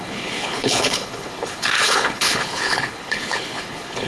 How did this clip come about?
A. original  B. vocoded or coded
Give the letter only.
B